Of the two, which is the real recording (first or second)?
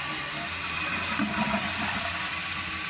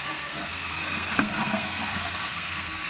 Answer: first